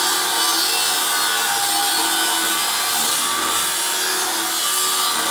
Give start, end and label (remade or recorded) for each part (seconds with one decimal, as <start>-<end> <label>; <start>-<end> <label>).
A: 0.0-5.3 recorded

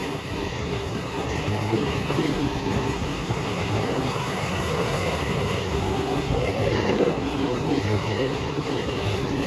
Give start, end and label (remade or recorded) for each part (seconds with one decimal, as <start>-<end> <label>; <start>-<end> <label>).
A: 0.0-9.5 remade

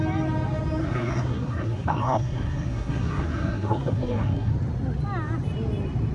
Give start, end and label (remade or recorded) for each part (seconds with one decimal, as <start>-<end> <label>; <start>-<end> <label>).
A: 0.0-0.8 recorded; 0.8-4.5 remade; 4.5-6.1 recorded

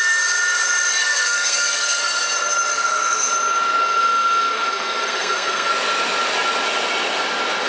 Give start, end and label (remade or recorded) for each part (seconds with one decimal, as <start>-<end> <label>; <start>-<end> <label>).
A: 0.0-1.0 recorded; 1.0-2.0 remade; 2.0-2.7 recorded; 2.7-3.3 remade; 3.3-3.8 recorded; 3.8-5.7 remade; 5.7-7.7 recorded

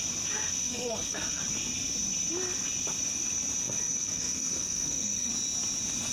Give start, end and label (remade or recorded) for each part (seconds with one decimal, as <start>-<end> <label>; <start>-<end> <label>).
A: 0.0-0.6 recorded; 0.6-1.4 remade; 1.4-3.6 recorded; 3.6-5.3 remade; 5.3-6.1 recorded